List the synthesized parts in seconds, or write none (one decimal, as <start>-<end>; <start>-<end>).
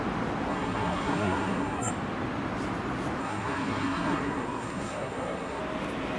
0.5-1.9; 3.2-5.6